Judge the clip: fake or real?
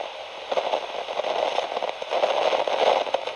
real